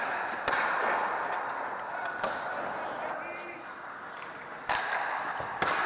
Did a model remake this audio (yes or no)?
no